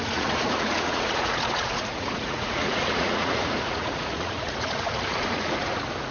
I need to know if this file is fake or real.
fake